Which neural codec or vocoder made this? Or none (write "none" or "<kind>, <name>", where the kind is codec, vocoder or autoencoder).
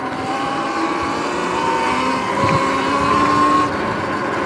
none